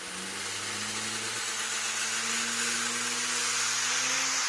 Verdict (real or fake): real